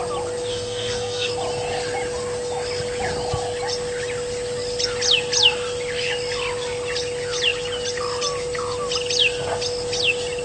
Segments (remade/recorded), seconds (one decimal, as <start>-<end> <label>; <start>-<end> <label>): 0.0-0.5 recorded; 0.5-1.3 remade; 1.3-10.4 recorded

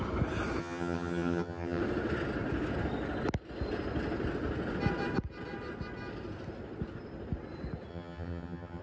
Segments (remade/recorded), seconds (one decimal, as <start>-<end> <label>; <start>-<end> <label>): 0.0-0.6 recorded; 0.6-1.8 remade; 1.8-7.9 recorded; 7.9-8.8 remade

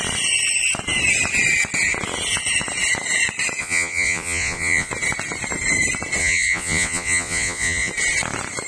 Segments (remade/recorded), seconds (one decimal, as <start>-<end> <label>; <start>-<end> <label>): 0.0-3.6 recorded; 3.6-4.9 remade; 4.9-6.2 recorded; 6.2-7.9 remade; 7.9-8.7 recorded

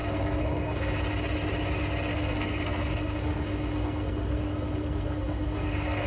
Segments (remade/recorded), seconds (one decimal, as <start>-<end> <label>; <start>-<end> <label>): 0.0-1.0 remade; 1.0-2.1 recorded; 2.1-6.1 remade

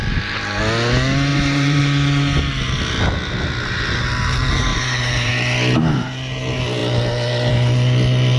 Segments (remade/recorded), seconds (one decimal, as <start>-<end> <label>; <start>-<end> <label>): 0.0-0.6 remade; 0.6-1.3 recorded; 1.3-1.8 remade; 1.8-4.7 recorded; 4.7-5.3 remade; 5.3-8.4 recorded

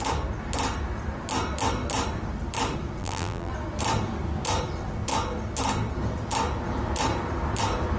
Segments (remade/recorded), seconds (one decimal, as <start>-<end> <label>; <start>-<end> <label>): 0.0-3.0 recorded; 3.0-3.5 remade; 3.5-8.0 recorded